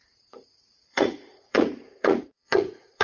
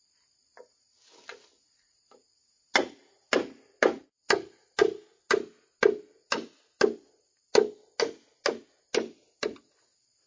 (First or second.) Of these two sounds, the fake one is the first